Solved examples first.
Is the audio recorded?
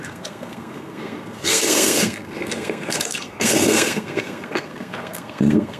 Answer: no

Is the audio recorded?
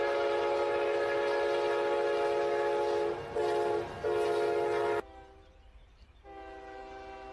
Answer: yes